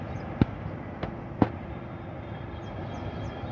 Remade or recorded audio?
recorded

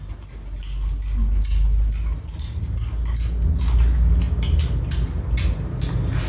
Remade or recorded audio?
recorded